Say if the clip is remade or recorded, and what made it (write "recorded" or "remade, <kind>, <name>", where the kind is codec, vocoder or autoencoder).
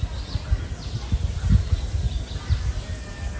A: recorded